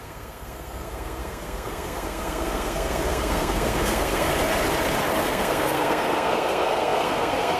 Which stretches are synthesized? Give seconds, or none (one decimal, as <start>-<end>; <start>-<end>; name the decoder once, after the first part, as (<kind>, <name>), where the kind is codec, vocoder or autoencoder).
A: 0.0-4.3 (codec, SNAC); 5.2-7.6